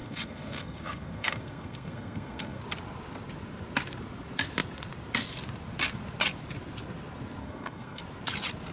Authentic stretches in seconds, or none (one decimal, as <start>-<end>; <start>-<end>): 2.6-7.4; 8.0-8.7